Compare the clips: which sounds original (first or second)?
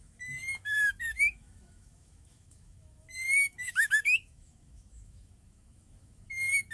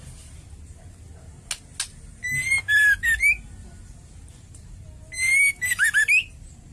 second